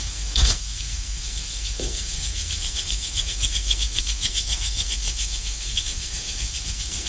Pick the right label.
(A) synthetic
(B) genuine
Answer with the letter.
A